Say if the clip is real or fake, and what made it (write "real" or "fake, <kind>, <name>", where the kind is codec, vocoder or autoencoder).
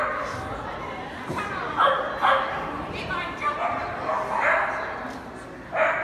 real